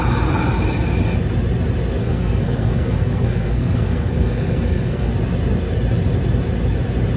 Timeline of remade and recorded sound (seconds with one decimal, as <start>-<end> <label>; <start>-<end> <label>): 0.0-2.0 recorded; 2.0-5.1 remade; 5.1-7.2 recorded